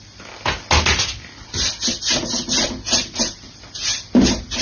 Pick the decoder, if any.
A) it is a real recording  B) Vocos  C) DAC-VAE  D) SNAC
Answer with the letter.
A